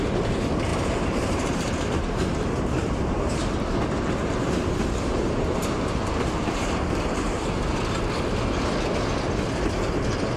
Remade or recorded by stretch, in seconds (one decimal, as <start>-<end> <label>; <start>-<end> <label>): 0.0-0.7 recorded; 0.7-3.4 remade; 3.4-4.2 recorded; 4.2-7.3 remade; 7.3-10.4 recorded